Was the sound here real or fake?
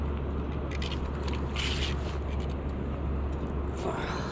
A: real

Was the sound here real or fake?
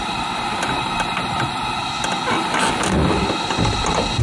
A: real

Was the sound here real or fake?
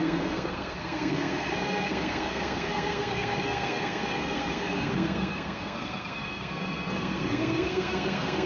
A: fake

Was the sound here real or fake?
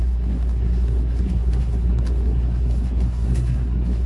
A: fake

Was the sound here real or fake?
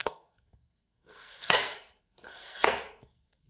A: fake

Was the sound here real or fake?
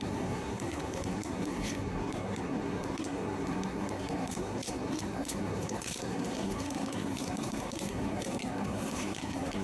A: fake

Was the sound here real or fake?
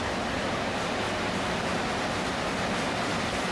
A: real